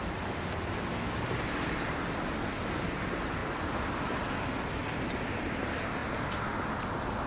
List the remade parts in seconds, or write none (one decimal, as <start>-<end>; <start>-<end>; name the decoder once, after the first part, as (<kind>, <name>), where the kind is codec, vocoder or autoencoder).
none